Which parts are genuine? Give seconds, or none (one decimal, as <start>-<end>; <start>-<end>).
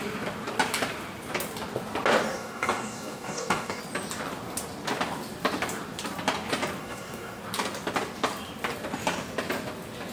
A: 0.0-2.3; 3.8-6.8; 7.4-10.1